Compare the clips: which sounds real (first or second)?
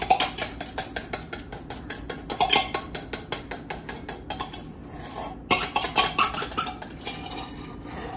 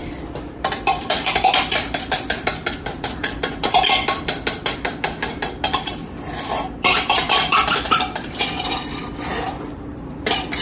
first